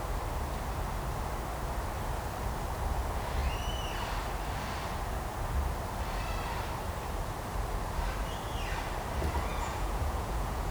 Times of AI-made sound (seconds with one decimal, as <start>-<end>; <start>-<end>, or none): 9.5-10.7